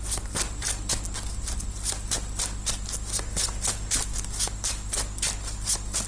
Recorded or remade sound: recorded